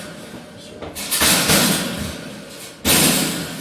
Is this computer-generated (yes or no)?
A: no